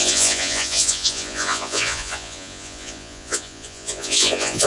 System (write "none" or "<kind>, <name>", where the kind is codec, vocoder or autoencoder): vocoder, Vocos